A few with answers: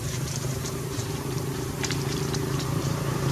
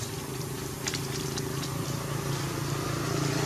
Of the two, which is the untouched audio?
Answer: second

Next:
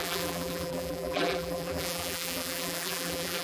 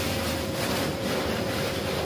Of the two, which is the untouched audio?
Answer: second